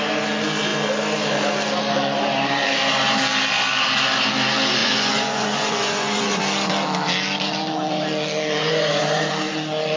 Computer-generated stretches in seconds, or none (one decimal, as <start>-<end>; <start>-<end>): 4.8-6.4; 8.6-9.3